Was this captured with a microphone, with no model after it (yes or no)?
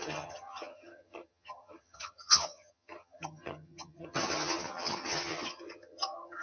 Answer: no